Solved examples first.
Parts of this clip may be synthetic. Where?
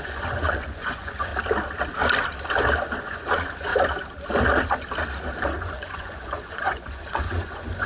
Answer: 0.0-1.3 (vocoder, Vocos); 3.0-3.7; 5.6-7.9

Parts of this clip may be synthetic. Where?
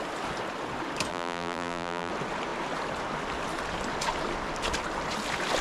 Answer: 1.1-2.1 (vocoder, BigVGAN v2)